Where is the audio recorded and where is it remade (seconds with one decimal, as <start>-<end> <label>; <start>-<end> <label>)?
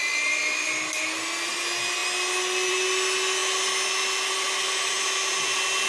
0.0-5.9 recorded